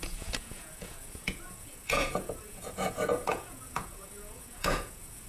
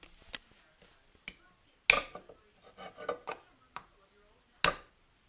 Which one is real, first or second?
second